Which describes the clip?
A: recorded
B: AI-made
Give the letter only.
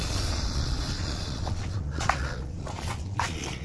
B